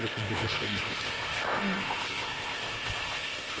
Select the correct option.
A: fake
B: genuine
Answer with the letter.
A